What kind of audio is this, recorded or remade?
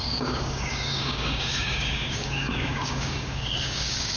remade